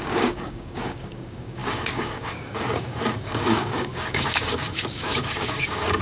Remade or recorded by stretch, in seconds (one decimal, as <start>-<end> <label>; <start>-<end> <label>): 0.0-6.0 remade